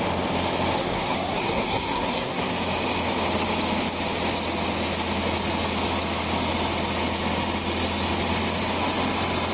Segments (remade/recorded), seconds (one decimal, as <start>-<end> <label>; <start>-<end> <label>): 0.0-0.8 recorded; 0.8-2.5 remade; 2.5-9.5 recorded